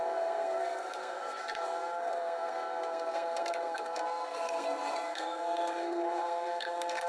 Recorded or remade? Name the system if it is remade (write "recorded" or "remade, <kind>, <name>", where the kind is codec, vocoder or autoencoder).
remade, codec, SNAC